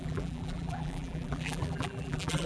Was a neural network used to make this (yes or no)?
yes